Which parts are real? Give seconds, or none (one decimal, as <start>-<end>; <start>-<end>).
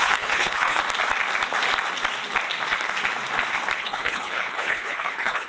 0.8-3.8